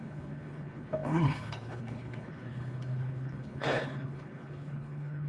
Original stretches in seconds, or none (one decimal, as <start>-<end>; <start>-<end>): none